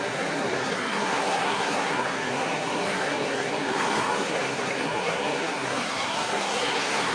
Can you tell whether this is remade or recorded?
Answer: remade